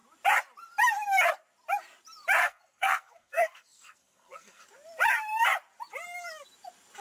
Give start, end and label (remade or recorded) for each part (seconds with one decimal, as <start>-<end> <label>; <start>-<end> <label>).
0.0-2.4 recorded; 2.4-4.6 remade; 4.6-7.0 recorded